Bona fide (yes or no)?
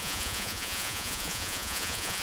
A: no